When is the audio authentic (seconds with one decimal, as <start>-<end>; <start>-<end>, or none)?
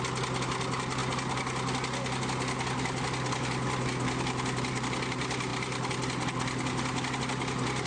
0.0-7.9